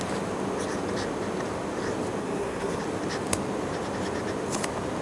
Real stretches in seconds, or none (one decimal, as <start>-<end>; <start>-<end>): 0.0-2.2; 2.8-5.0